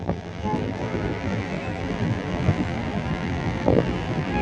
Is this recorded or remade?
remade